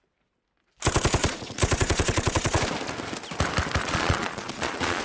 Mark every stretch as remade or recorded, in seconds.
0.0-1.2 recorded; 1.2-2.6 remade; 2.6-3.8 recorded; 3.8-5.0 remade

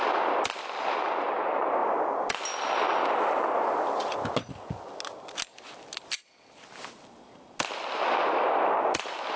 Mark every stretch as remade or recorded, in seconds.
0.0-9.4 recorded

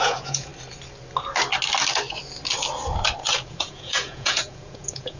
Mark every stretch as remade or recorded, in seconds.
0.0-0.5 remade; 0.5-3.3 recorded; 3.3-5.2 remade

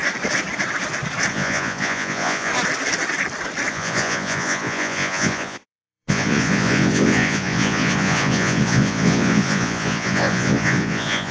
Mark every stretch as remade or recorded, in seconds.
0.0-1.3 recorded; 1.3-2.5 remade; 2.5-3.7 recorded; 3.7-11.3 remade